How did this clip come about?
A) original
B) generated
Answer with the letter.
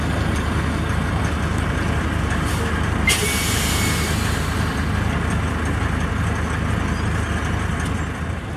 A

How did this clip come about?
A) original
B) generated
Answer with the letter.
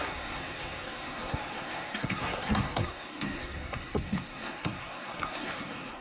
B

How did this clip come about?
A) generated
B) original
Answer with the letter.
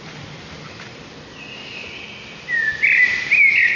B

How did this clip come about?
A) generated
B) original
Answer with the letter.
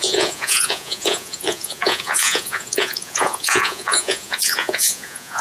A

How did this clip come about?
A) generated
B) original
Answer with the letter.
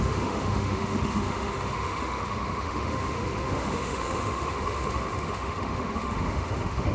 A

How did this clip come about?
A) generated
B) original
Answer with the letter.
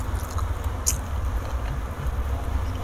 B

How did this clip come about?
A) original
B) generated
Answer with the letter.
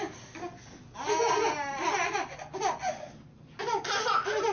A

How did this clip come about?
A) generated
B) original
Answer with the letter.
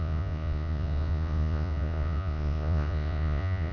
A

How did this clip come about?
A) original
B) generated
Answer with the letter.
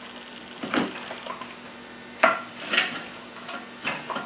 A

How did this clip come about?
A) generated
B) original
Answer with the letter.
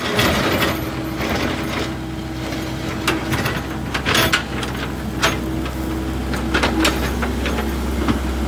B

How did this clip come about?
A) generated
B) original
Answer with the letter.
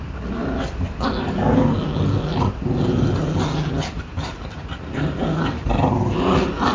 B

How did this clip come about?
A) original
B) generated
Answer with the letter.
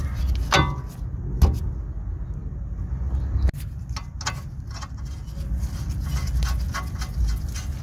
A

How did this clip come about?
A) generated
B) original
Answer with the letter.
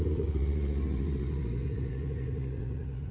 A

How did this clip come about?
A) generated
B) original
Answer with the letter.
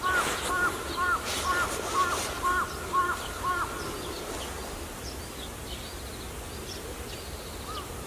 B